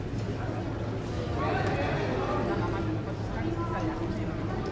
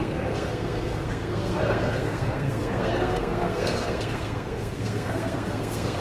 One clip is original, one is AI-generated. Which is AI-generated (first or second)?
second